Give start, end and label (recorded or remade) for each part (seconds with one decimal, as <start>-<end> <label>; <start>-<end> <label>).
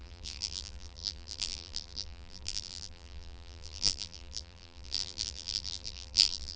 0.0-6.6 remade